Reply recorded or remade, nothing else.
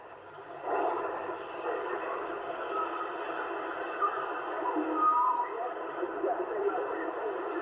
recorded